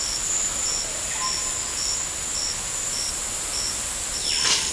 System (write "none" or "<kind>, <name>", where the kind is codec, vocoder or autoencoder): none